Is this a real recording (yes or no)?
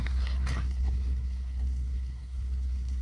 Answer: no